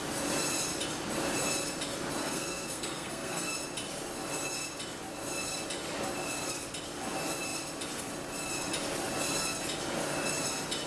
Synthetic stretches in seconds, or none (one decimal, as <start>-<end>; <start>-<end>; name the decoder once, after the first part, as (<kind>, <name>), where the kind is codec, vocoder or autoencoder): 2.2-3.5 (codec, SNAC)